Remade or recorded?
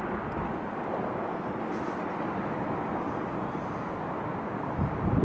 recorded